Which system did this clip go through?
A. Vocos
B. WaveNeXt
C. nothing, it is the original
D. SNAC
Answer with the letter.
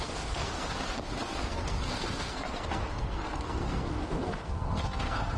D